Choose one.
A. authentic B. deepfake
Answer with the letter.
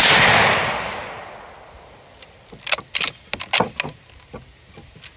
A